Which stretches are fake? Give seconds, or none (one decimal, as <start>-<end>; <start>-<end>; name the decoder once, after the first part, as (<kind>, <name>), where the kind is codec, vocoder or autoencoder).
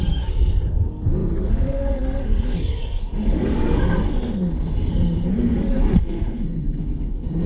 0.0-7.5 (codec, SNAC)